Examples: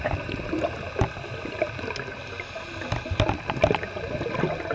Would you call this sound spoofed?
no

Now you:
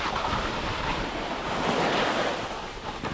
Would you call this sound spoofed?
no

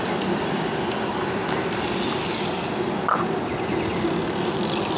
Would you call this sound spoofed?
no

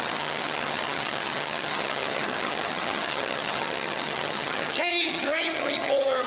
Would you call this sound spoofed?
yes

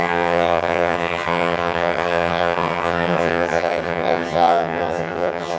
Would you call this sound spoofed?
yes